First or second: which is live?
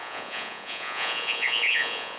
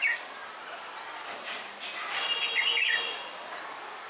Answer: second